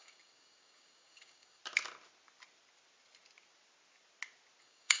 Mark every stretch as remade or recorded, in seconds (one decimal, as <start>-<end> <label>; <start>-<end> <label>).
0.0-1.6 remade; 1.6-4.6 recorded; 4.6-5.0 remade